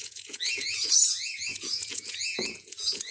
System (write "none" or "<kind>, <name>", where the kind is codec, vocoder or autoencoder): vocoder, Vocos